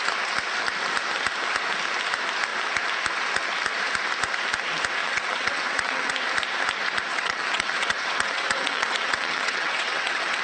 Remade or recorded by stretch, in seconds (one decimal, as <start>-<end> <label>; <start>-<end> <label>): 0.0-5.0 recorded; 5.0-6.1 remade; 6.1-7.1 recorded; 7.1-10.4 remade